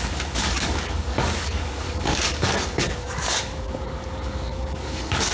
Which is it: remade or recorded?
remade